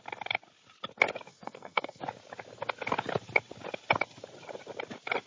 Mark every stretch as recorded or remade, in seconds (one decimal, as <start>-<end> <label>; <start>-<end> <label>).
0.0-1.3 recorded; 1.3-2.0 remade; 2.0-5.3 recorded